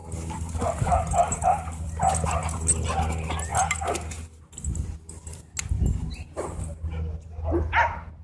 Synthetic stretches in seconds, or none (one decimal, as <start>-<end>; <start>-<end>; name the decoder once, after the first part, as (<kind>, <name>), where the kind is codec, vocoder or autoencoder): 0.0-0.5 (vocoder, BigVGAN v2); 0.9-2.4; 3.5-4.5